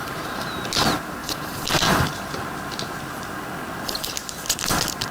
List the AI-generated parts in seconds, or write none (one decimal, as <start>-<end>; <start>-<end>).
0.0-0.6; 1.2-2.4